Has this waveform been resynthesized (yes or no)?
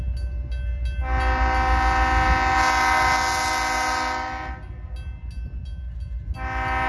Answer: no